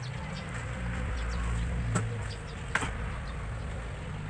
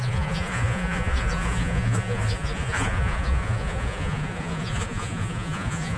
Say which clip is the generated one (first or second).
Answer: second